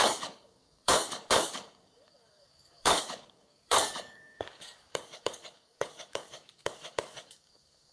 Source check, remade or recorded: remade